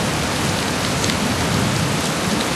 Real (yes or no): yes